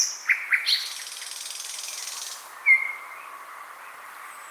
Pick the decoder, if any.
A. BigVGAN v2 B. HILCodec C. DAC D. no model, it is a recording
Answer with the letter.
D